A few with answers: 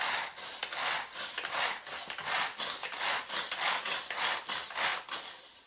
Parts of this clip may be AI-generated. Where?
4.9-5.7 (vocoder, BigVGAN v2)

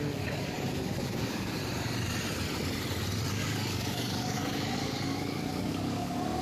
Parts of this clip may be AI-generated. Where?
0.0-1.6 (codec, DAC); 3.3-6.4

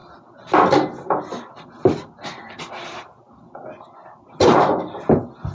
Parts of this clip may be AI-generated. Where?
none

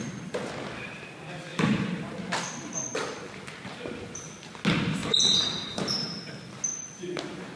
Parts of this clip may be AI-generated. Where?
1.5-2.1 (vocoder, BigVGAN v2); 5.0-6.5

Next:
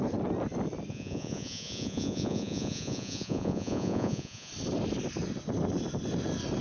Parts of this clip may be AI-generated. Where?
0.9-4.5 (vocoder, Vocos)

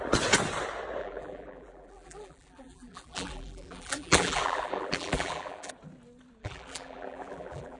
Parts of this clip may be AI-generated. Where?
1.0-5.7 (vocoder, BigVGAN v2); 6.4-7.8